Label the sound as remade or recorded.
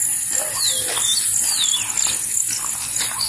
recorded